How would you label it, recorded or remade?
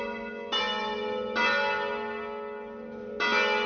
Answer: recorded